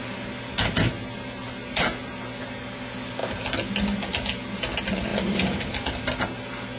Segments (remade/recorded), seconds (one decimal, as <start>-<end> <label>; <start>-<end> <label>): 0.0-6.8 recorded